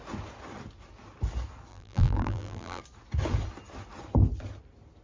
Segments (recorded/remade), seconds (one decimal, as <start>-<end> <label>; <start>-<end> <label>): 0.0-1.7 recorded; 1.7-2.8 remade; 2.8-5.0 recorded